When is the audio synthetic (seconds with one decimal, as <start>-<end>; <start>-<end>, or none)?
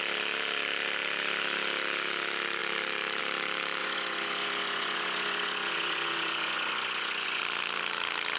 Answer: 3.8-7.4